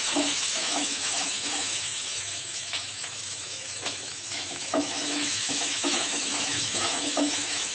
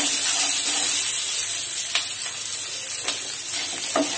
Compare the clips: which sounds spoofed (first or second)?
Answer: first